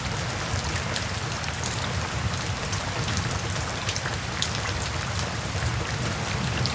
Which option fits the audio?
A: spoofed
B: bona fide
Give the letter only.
A